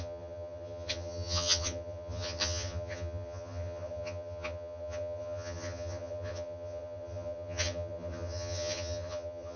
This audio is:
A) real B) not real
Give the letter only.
B